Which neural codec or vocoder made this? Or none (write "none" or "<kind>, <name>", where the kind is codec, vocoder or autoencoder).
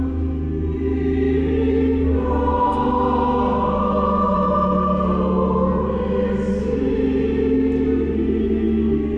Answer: none